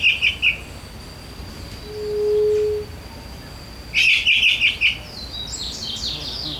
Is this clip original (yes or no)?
yes